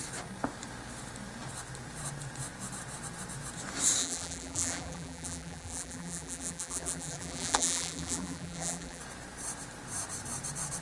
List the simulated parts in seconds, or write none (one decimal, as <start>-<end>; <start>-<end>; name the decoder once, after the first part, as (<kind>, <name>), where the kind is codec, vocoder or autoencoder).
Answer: 4.0-9.0 (vocoder, BigVGAN v2)